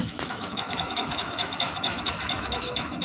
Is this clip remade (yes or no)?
yes